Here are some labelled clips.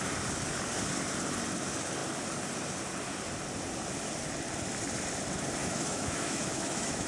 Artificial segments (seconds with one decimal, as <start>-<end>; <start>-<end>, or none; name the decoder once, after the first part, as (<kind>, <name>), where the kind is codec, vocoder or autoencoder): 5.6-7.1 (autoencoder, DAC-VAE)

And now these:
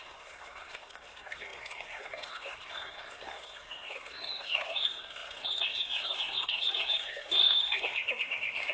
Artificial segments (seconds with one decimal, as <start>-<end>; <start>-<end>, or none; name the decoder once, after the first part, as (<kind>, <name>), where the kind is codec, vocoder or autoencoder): 0.0-8.7 (codec, SNAC)

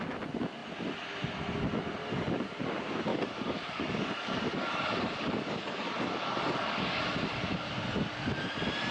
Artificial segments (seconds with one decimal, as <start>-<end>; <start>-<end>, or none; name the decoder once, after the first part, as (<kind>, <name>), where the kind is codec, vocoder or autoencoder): 2.0-2.6 (codec, DAC); 3.1-7.0

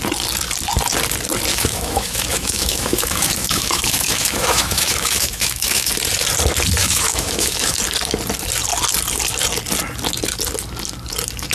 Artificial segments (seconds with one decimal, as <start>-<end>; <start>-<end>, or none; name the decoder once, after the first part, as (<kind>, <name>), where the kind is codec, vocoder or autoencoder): 1.5-5.9 (autoencoder, DAC-VAE); 6.8-7.8

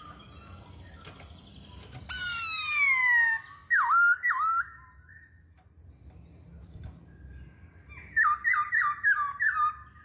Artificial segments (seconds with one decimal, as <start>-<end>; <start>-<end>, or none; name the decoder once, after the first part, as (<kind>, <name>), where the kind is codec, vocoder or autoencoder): none

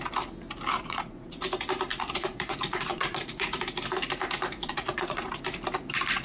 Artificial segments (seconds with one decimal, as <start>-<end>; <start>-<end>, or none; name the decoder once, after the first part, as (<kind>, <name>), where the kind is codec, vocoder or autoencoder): 0.7-1.4 (vocoder, Vocos); 1.9-3.6; 4.6-5.3

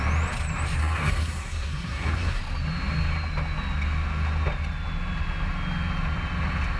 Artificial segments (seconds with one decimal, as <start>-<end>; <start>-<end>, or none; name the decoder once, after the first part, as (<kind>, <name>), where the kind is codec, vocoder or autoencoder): 0.8-2.4 (codec, SNAC)